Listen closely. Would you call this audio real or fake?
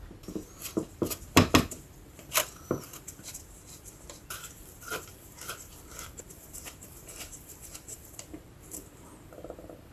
fake